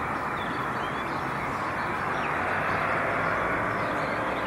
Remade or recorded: recorded